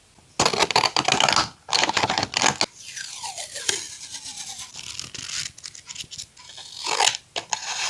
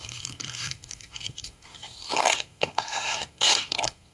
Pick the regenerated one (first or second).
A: second